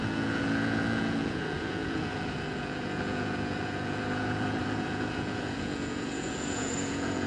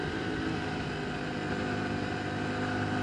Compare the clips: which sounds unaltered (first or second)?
second